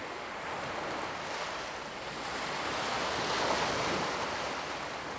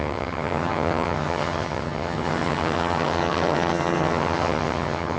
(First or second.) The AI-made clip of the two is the second